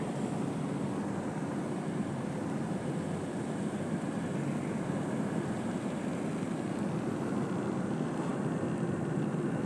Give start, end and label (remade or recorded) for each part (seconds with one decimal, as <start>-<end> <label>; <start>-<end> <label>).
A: 0.0-9.7 recorded